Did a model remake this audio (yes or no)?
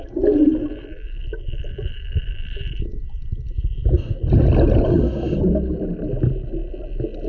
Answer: no